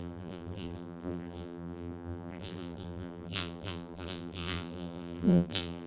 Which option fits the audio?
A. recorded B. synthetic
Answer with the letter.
B